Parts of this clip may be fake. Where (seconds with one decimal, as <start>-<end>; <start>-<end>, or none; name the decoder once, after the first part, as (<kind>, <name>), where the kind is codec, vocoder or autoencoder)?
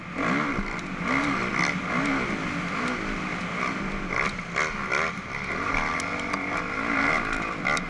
none